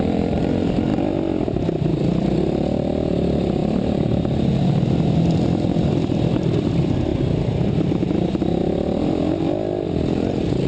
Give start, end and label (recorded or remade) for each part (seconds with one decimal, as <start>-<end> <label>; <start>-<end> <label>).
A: 0.0-0.9 remade; 0.9-2.4 recorded; 2.4-7.1 remade; 7.1-7.7 recorded; 7.7-8.6 remade; 8.6-9.4 recorded; 9.4-10.7 remade

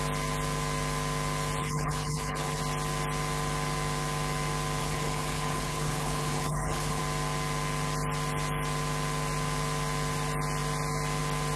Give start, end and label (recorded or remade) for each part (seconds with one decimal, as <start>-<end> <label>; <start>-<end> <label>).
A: 0.0-1.6 recorded; 1.6-2.6 remade; 2.6-4.8 recorded; 4.8-7.0 remade; 7.0-11.6 recorded

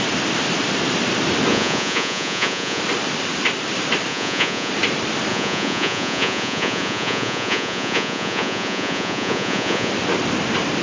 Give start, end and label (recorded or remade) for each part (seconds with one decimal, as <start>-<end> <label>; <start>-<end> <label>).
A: 0.0-1.5 recorded; 1.5-2.8 remade; 2.8-4.1 recorded; 4.1-4.7 remade; 4.7-5.3 recorded; 5.3-9.9 remade; 9.9-10.8 recorded

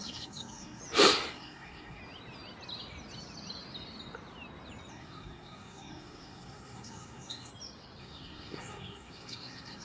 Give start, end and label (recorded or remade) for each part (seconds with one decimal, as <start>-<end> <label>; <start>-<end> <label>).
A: 0.0-0.8 remade; 0.8-1.3 recorded; 1.3-2.0 remade; 2.0-4.9 recorded; 4.9-7.5 remade; 7.5-8.0 recorded; 8.0-9.8 remade

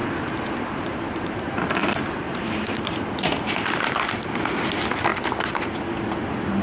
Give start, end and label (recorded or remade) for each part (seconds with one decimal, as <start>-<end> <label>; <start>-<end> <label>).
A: 0.0-3.0 remade; 3.0-6.6 recorded

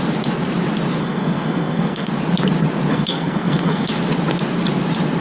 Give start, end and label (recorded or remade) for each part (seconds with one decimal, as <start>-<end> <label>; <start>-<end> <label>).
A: 0.0-1.0 recorded; 1.0-2.1 remade; 2.1-2.9 recorded; 2.9-3.9 remade; 3.9-5.2 recorded

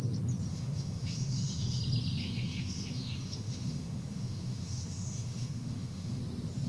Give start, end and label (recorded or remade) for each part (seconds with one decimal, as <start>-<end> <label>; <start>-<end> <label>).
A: 0.0-0.5 recorded; 0.5-1.8 remade; 1.8-2.2 recorded; 2.2-6.2 remade; 6.2-6.7 recorded